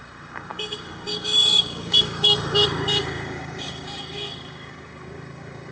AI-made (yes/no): yes